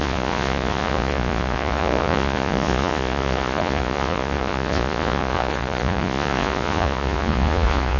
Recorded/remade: remade